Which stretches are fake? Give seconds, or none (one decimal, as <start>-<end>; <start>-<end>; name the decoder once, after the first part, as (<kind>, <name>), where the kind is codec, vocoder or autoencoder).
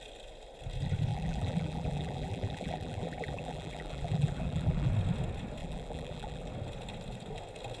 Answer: 1.1-4.9 (vocoder, BigVGAN v2); 5.6-6.5